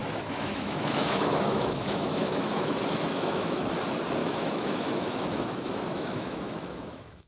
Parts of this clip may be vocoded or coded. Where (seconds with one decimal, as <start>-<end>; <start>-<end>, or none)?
0.0-3.6; 4.2-7.3